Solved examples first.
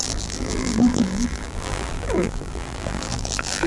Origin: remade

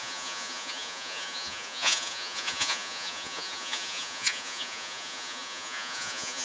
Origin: remade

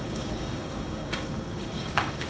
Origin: remade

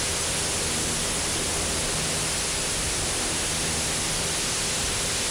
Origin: recorded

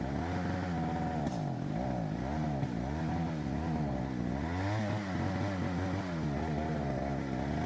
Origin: recorded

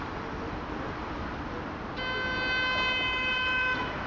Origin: recorded